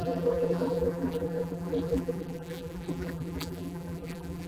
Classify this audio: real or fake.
fake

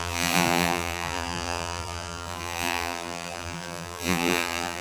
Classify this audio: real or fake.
fake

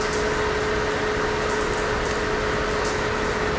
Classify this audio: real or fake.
real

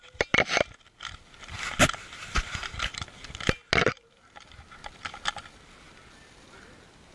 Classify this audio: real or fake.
real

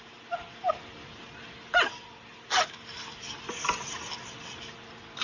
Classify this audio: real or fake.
real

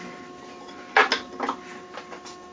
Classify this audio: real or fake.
real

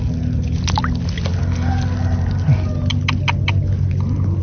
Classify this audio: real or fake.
real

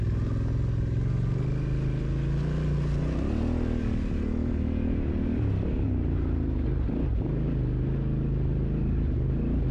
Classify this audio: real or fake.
real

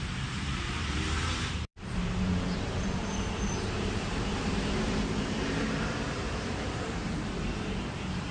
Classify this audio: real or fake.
fake